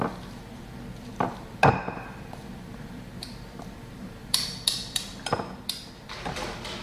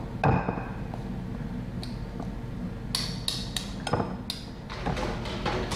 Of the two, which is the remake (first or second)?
first